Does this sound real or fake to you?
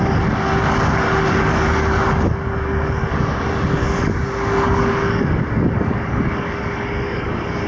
fake